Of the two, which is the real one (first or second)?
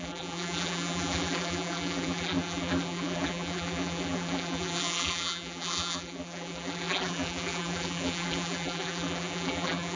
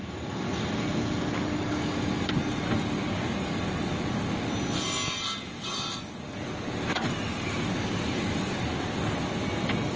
second